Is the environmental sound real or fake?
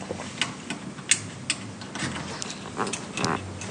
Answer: real